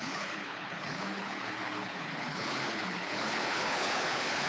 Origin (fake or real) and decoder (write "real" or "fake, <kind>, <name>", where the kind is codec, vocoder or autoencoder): fake, codec, HILCodec